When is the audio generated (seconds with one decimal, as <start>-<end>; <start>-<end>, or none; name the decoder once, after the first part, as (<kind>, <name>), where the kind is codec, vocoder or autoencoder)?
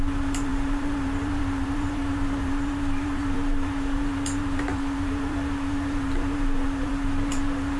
0.0-7.8 (vocoder, BigVGAN v2)